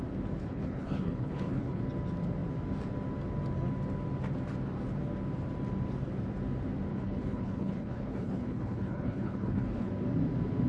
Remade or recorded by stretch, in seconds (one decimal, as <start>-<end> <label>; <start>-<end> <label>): 0.0-0.4 recorded; 0.4-1.8 remade; 1.8-6.9 recorded; 6.9-9.9 remade; 9.9-10.7 recorded